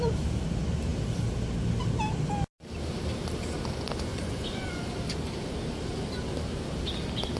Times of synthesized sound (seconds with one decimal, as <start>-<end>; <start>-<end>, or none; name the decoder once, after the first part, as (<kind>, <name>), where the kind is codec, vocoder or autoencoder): 4.1-4.8 (vocoder, Vocos)